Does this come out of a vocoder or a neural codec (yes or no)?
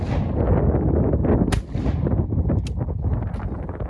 no